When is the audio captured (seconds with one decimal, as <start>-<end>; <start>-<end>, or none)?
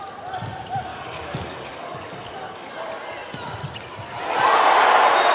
0.0-0.9; 2.7-5.3